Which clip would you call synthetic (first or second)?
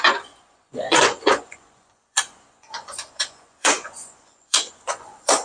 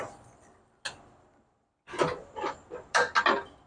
first